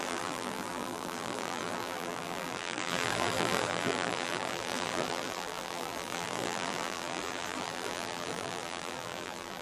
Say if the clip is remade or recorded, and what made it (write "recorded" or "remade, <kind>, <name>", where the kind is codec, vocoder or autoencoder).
remade, vocoder, BigVGAN v2